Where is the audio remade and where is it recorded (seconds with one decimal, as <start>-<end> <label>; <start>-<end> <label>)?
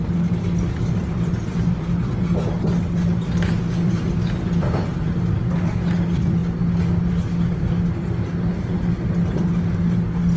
0.0-10.4 recorded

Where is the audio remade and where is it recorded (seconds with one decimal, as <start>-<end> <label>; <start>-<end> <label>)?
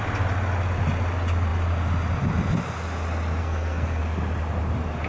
0.0-3.4 recorded; 3.4-4.0 remade; 4.0-5.1 recorded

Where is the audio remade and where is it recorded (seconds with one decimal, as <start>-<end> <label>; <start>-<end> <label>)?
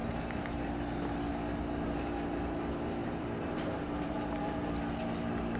0.0-3.0 recorded; 3.0-4.7 remade; 4.7-5.6 recorded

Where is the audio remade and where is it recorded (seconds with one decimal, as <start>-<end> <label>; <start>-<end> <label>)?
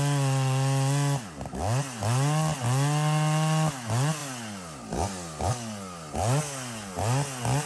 0.0-7.7 recorded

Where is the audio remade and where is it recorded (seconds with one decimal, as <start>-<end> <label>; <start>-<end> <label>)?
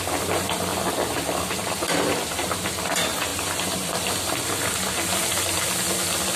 0.0-3.3 recorded; 3.3-4.3 remade; 4.3-6.4 recorded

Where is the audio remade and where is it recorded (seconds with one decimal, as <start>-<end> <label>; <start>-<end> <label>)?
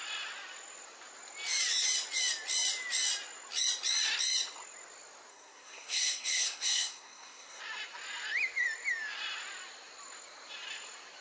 0.0-5.3 recorded; 5.3-7.6 remade; 7.6-11.2 recorded